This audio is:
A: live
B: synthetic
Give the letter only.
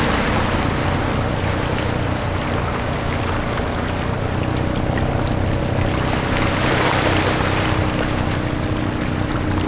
A